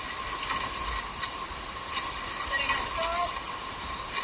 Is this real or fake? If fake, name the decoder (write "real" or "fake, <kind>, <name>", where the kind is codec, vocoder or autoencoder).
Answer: real